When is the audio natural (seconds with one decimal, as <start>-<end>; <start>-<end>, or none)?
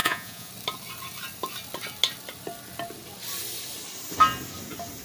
0.5-5.0